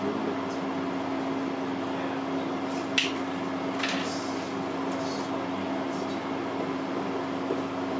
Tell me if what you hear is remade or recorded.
recorded